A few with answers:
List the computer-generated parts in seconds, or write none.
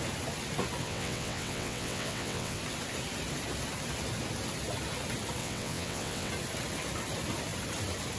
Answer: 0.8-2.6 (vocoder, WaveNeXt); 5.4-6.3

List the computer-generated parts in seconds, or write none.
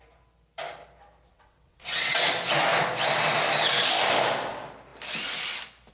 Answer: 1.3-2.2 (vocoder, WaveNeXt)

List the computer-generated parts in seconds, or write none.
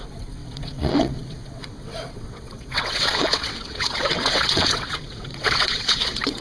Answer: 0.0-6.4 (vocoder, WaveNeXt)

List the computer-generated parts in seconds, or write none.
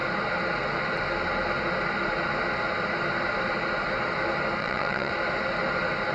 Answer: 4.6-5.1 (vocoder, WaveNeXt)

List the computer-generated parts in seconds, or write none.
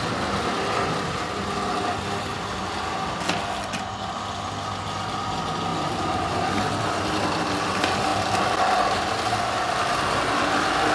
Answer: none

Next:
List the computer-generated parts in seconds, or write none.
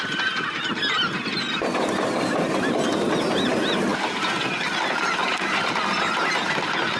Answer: none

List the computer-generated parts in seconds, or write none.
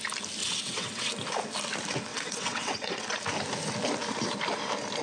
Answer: 0.4-1.1 (vocoder, WaveNeXt); 2.1-3.0